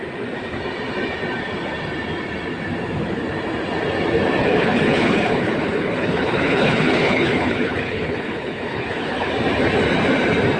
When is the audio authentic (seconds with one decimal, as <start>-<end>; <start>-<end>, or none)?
0.0-4.4; 9.3-10.6